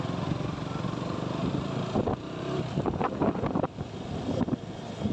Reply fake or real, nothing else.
fake